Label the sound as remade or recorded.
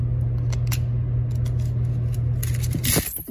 recorded